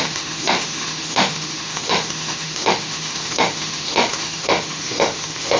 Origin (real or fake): fake